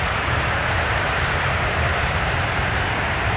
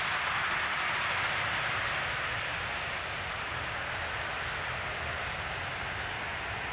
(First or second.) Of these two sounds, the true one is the second